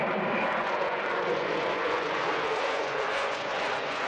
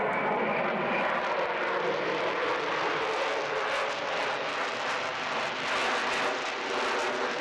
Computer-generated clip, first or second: first